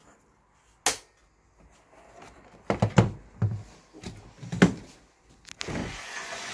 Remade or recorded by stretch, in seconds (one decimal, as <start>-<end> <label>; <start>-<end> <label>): 0.0-5.8 recorded; 5.8-6.5 remade